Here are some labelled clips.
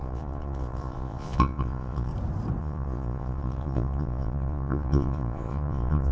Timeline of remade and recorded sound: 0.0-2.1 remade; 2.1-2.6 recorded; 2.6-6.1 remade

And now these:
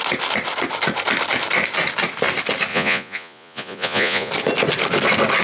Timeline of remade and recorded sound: 0.0-2.7 recorded; 2.7-4.3 remade; 4.3-5.4 recorded